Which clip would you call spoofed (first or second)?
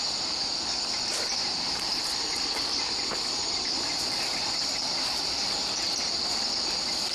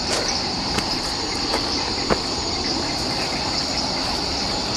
first